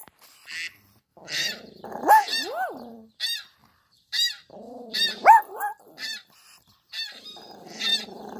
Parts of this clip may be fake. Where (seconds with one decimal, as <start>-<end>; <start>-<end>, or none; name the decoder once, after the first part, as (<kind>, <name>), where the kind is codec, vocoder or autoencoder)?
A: 0.0-7.9 (vocoder, BigVGAN v2)